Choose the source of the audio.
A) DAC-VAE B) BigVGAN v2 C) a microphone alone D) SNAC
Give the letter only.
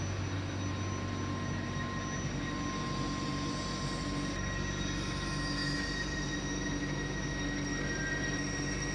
C